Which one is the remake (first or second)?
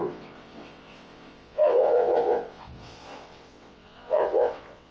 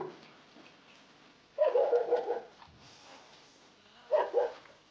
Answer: first